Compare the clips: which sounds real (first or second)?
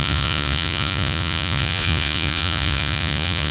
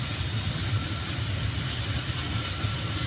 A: second